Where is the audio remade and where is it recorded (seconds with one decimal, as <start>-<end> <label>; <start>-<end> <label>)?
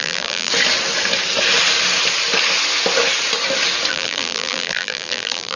0.0-0.5 remade; 0.5-3.9 recorded; 3.9-5.6 remade